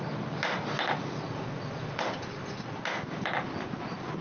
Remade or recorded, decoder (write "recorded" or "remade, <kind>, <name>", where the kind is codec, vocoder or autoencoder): remade, vocoder, BigVGAN v2